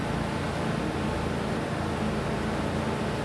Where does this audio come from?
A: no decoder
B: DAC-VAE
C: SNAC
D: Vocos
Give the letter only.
A